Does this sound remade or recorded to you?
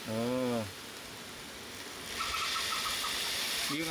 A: recorded